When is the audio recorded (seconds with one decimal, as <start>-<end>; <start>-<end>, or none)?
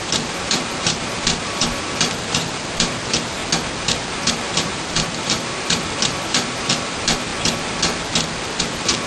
3.4-4.3; 7.3-8.6